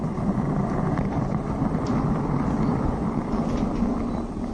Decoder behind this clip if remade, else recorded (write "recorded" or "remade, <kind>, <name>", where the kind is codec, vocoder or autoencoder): recorded